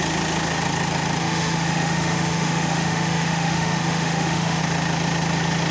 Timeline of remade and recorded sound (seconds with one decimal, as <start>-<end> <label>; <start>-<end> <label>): 0.0-1.2 recorded; 1.2-4.6 remade; 4.6-5.7 recorded